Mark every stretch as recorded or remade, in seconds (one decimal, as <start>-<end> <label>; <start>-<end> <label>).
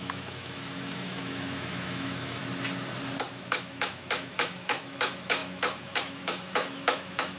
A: 0.0-2.4 remade; 2.4-3.3 recorded; 3.3-7.4 remade